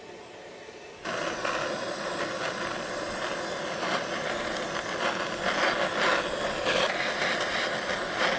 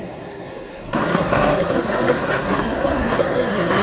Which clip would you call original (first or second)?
first